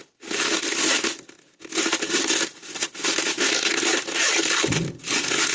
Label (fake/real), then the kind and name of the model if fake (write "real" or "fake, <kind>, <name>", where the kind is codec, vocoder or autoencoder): real